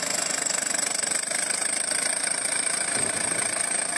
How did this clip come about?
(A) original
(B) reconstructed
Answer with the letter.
A